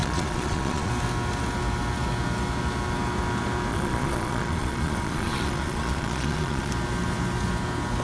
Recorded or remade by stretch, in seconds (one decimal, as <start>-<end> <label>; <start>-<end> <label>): 0.0-0.9 remade; 0.9-3.7 recorded; 3.7-6.7 remade; 6.7-8.0 recorded